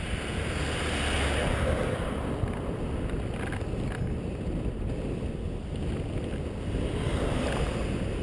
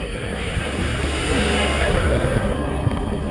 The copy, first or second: second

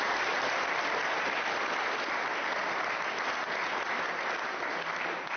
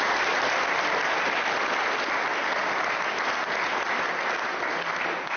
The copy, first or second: first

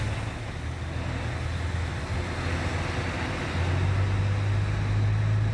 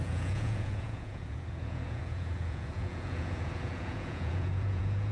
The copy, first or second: second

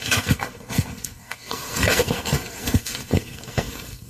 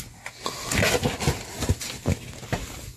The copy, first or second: first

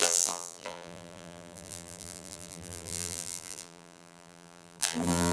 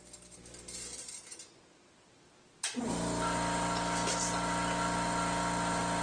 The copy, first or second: first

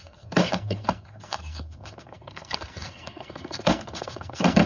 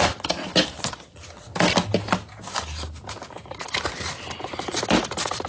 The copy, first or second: first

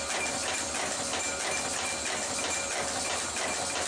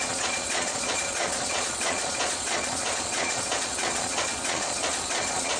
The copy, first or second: second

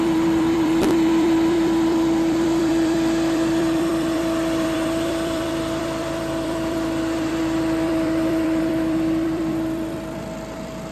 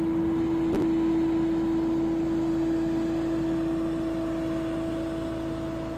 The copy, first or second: first